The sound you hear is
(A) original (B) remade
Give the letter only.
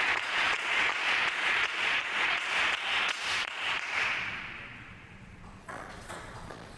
B